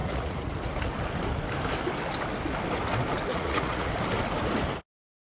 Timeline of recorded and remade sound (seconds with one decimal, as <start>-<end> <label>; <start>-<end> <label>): 0.0-0.5 remade; 0.5-3.3 recorded; 3.3-3.9 remade; 3.9-5.3 recorded